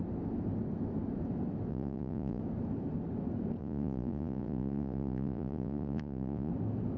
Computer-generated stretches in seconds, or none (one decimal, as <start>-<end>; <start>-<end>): 1.7-2.4; 3.6-6.5